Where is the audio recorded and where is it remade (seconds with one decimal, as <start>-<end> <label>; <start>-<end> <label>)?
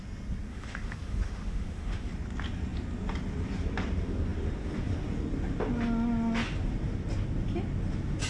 0.0-0.5 recorded; 0.5-2.1 remade; 2.1-8.3 recorded